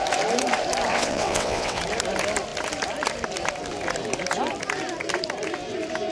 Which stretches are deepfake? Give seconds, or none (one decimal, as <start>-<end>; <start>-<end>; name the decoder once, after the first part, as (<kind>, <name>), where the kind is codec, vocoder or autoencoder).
0.9-1.8 (vocoder, WaveNeXt)